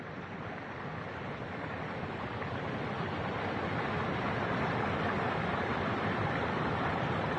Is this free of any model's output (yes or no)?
yes